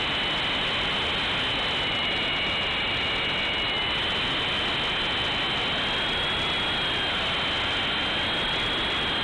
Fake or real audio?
real